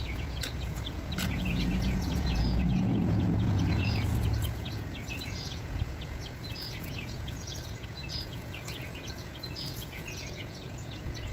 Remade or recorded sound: remade